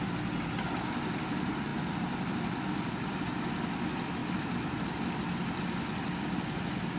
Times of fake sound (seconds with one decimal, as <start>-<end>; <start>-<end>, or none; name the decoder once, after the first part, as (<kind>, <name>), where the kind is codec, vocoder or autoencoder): none